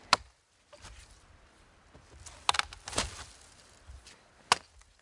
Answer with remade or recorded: recorded